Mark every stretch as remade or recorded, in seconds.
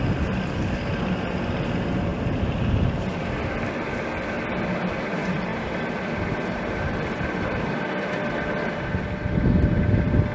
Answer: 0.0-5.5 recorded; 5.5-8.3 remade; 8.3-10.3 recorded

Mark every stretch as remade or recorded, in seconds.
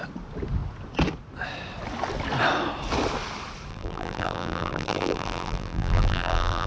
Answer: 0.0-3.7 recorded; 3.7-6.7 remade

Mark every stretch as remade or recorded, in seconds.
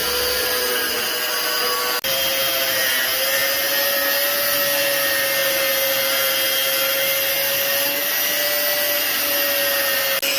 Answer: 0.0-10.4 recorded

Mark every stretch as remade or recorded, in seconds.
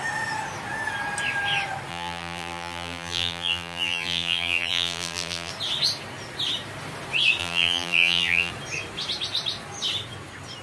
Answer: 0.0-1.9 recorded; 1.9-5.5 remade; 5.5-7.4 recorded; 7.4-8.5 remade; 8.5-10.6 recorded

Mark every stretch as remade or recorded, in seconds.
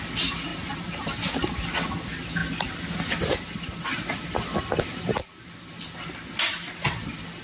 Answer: 0.0-0.5 recorded; 0.5-1.3 remade; 1.3-7.4 recorded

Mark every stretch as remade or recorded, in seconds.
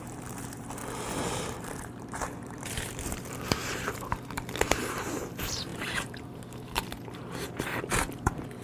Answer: 0.0-0.8 remade; 0.8-1.4 recorded; 1.4-8.6 remade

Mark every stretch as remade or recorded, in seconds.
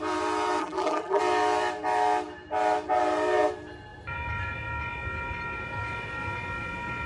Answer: 0.0-0.6 recorded; 0.6-1.2 remade; 1.2-7.1 recorded